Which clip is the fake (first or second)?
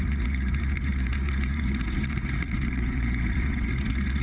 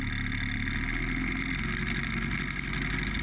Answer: first